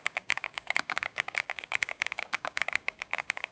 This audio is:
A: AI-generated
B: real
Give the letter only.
A